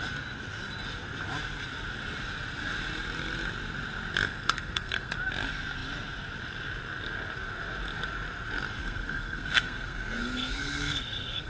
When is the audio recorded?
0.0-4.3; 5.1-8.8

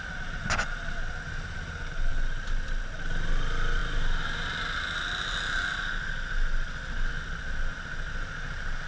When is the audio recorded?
0.0-8.9

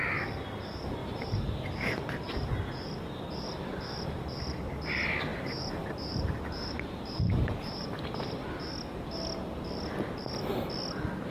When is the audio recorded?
0.0-1.0; 2.3-5.3; 8.3-11.3

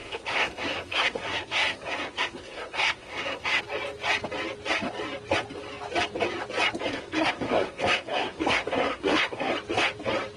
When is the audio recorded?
3.6-6.9; 9.5-10.4

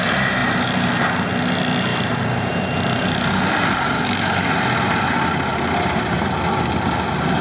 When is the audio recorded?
0.0-1.9; 3.4-5.5; 6.2-7.4

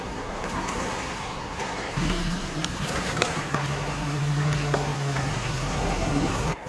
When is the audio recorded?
none

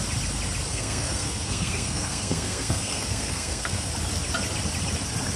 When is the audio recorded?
0.0-0.7; 3.9-5.4